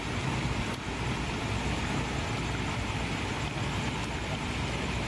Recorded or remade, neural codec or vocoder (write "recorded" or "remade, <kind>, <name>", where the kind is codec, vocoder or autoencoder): recorded